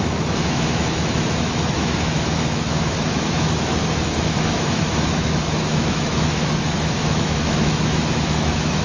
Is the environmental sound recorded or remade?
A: remade